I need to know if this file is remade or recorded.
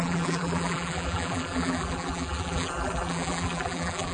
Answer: remade